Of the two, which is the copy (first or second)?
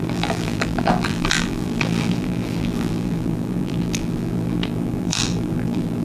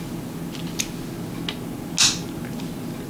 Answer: first